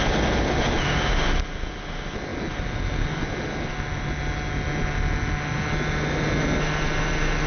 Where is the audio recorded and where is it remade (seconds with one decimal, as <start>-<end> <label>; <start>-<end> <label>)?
0.0-7.5 recorded